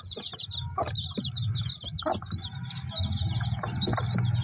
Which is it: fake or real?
real